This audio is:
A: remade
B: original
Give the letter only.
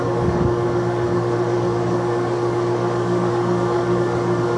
A